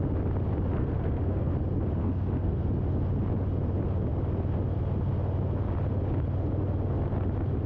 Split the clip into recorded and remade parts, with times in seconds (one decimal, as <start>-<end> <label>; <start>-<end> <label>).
0.0-0.8 recorded; 0.8-1.5 remade; 1.5-2.0 recorded; 2.0-2.7 remade; 2.7-7.7 recorded